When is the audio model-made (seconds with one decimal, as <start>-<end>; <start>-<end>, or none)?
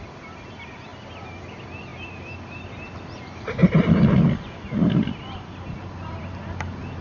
1.9-3.2; 3.6-6.2